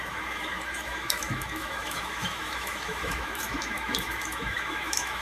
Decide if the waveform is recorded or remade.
remade